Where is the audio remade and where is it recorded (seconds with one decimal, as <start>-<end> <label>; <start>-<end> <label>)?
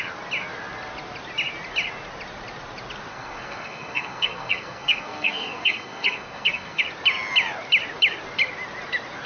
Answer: 0.0-3.1 recorded; 3.1-6.8 remade; 6.8-9.3 recorded